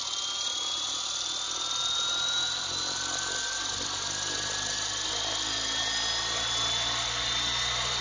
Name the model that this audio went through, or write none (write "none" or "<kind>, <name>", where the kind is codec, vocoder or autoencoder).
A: none